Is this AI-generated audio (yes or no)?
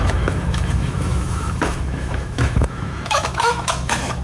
yes